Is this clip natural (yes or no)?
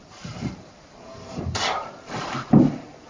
no